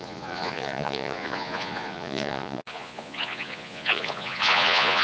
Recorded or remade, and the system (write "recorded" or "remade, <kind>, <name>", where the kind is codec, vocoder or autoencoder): remade, vocoder, Vocos